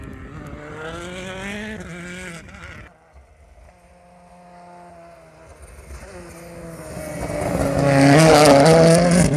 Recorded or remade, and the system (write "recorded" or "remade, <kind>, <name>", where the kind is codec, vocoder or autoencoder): recorded